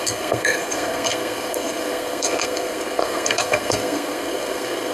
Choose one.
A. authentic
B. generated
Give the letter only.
B